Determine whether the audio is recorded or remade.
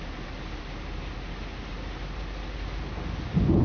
recorded